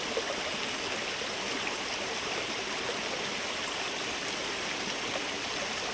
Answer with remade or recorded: recorded